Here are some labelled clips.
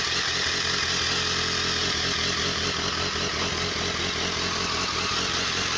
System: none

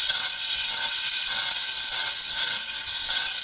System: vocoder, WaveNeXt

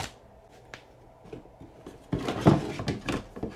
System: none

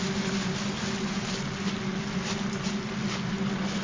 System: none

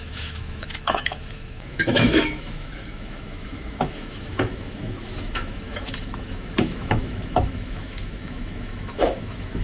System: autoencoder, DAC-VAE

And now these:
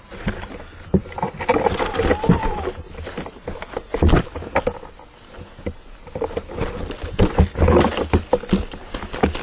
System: none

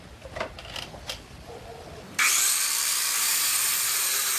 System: vocoder, BigVGAN v2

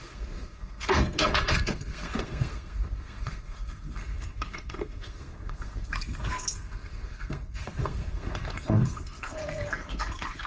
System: codec, SNAC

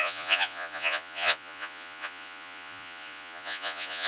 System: vocoder, Vocos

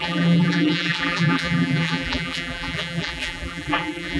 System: vocoder, BigVGAN v2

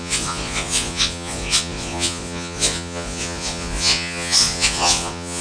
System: vocoder, Vocos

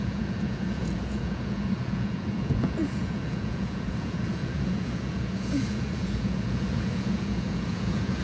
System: vocoder, Vocos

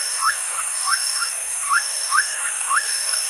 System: codec, DAC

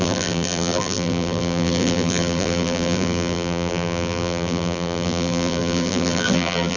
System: vocoder, BigVGAN v2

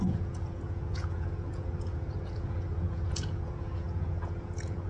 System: vocoder, Vocos